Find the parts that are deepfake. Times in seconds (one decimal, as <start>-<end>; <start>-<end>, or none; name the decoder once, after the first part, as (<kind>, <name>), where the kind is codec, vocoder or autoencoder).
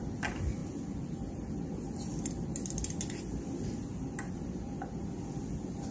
none